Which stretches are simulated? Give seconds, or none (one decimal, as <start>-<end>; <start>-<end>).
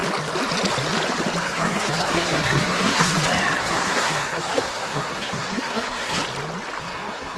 1.4-3.1; 3.6-6.2; 6.8-7.4